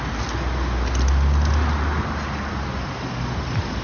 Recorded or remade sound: recorded